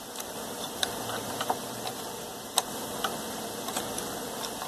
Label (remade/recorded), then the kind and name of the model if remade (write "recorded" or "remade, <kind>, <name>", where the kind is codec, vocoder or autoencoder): recorded